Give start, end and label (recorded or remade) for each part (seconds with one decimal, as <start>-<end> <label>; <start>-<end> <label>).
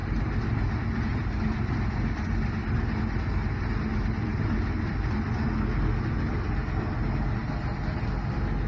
0.0-8.7 recorded